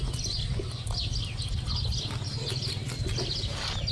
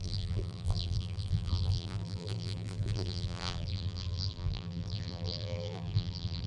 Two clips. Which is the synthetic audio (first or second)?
second